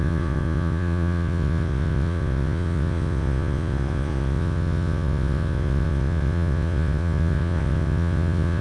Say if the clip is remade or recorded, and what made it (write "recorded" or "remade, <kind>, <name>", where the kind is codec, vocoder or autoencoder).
remade, vocoder, Vocos